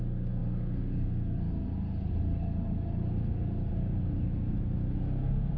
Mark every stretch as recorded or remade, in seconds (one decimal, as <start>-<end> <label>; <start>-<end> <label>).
0.0-5.6 recorded